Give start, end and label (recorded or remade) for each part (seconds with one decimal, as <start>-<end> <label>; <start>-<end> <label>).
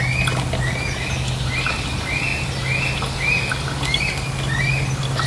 0.0-5.3 recorded